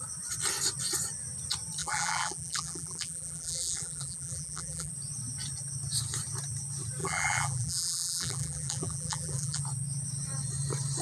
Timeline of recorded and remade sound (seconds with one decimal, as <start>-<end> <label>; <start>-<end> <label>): 0.0-1.8 recorded; 1.8-4.9 remade; 4.9-7.0 recorded; 7.0-9.6 remade; 9.6-11.0 recorded